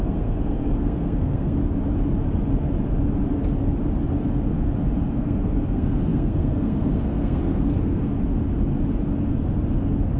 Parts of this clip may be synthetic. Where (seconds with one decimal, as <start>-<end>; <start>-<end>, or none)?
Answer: 0.0-1.6; 5.1-8.1